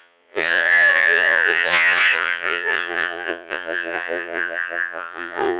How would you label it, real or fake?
fake